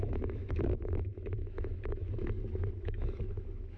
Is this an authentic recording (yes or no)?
no